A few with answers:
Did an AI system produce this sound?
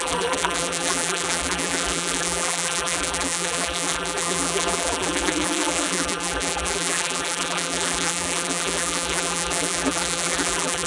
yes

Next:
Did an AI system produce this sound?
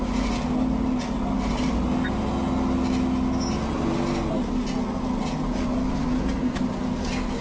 no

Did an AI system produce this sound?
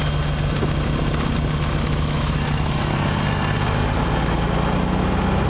no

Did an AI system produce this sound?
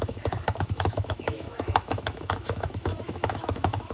yes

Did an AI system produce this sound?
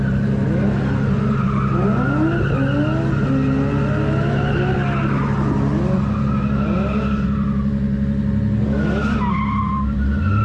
no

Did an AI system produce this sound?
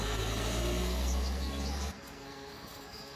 yes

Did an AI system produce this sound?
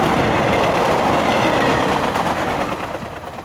no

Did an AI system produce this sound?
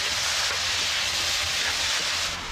no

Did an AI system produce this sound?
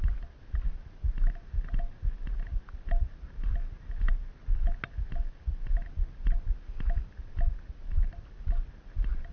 no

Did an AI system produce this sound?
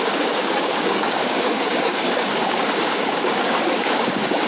yes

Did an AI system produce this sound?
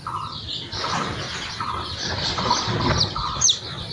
no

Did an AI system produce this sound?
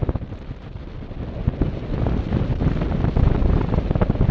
no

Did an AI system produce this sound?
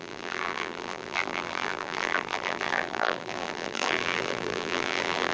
yes